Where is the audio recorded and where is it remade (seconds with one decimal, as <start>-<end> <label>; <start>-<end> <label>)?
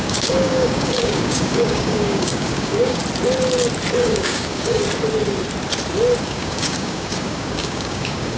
0.0-3.0 remade; 3.0-4.0 recorded; 4.0-4.8 remade; 4.8-6.2 recorded; 6.2-8.4 remade